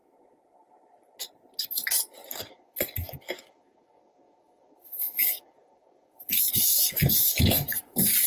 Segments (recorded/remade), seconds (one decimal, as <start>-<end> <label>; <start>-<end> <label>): 0.0-2.3 recorded; 2.3-8.3 remade